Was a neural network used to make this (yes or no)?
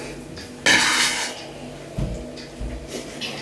no